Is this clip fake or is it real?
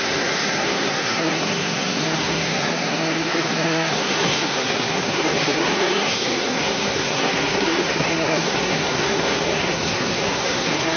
fake